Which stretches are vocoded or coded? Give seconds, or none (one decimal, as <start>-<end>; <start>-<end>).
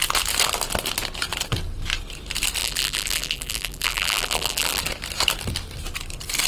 2.6-4.8